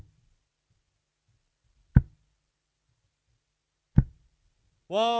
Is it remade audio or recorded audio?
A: recorded